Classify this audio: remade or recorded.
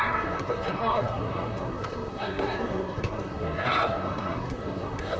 remade